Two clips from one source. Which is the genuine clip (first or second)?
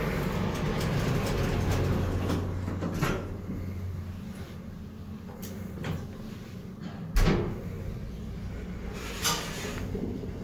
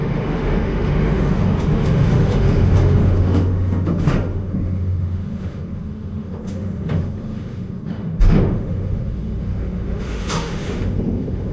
first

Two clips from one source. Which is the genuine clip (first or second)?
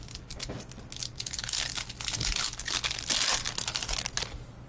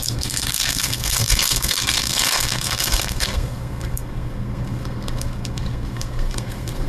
first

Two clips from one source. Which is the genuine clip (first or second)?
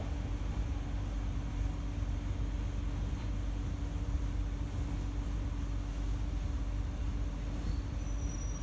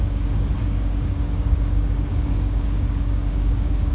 first